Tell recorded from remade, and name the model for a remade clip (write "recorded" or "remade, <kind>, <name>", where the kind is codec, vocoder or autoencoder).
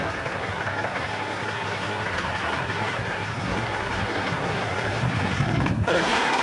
remade, codec, SNAC